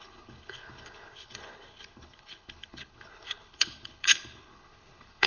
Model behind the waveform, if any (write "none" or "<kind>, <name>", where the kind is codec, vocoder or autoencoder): codec, HILCodec